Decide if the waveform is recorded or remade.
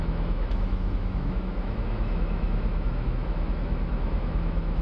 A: remade